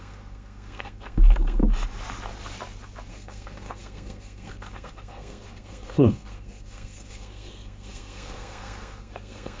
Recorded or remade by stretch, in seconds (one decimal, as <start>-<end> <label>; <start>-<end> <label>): 0.0-1.6 remade; 1.6-3.1 recorded; 3.1-9.6 remade